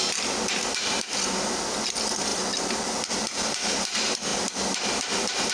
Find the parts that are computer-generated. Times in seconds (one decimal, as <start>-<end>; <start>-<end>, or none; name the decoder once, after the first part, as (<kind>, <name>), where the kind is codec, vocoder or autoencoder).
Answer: none